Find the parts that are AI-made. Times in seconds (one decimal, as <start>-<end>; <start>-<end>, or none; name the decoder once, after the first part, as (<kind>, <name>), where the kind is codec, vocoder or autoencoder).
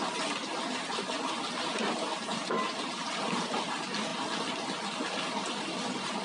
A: none